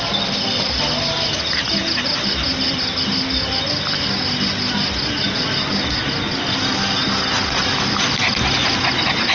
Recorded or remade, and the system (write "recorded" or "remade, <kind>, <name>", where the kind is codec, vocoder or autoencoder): recorded